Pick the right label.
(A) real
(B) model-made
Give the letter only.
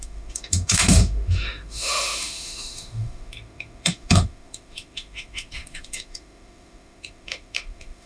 B